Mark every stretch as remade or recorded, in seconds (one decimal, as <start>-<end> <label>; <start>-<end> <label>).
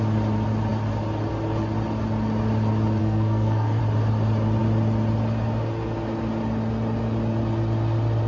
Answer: 0.0-3.0 recorded; 3.0-3.8 remade; 3.8-8.3 recorded